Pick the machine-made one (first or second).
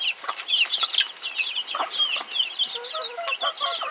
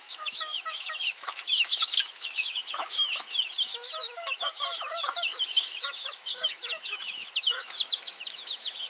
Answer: second